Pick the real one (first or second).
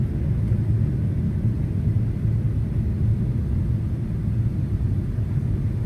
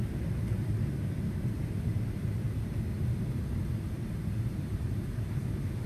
first